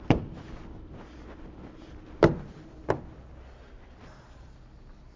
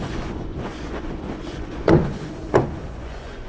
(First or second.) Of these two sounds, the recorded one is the first